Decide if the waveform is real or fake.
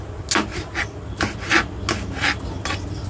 real